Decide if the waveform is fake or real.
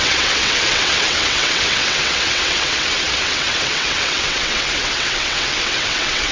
fake